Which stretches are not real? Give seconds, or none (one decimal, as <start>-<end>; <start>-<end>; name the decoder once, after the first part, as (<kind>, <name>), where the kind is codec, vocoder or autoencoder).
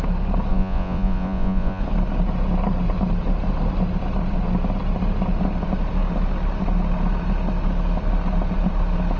0.5-1.8 (vocoder, Vocos)